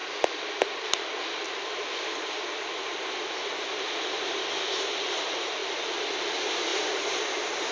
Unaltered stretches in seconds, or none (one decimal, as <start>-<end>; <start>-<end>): 0.0-7.7